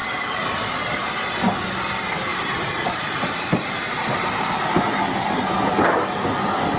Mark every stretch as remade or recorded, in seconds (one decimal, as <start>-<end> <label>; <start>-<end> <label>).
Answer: 0.0-2.3 recorded; 2.3-4.6 remade; 4.6-6.8 recorded